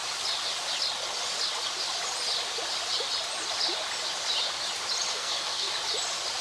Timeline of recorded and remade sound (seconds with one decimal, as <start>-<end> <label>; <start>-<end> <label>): 0.0-5.1 recorded; 5.1-5.7 remade; 5.7-6.4 recorded